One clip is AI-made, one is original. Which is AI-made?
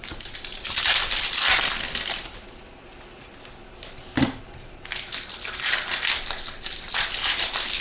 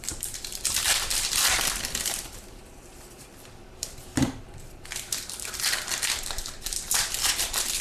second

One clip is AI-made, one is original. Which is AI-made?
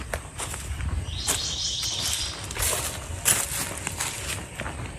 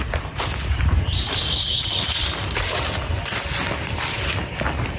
second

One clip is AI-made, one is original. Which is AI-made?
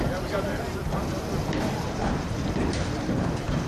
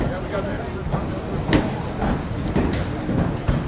first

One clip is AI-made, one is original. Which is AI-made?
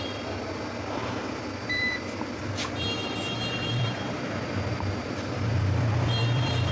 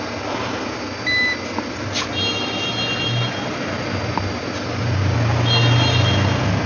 first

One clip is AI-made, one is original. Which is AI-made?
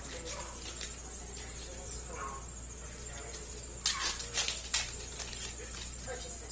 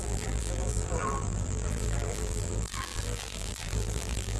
second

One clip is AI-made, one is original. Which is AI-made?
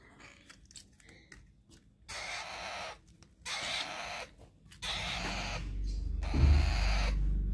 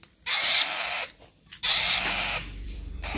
second